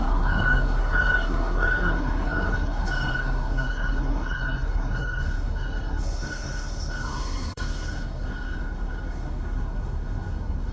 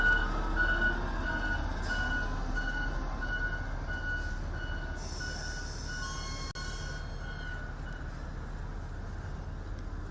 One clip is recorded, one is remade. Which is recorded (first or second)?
second